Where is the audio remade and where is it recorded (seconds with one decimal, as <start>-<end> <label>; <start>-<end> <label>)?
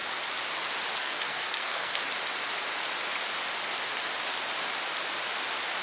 0.0-1.0 recorded; 1.0-2.0 remade; 2.0-5.8 recorded